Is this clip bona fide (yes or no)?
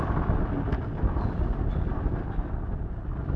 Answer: yes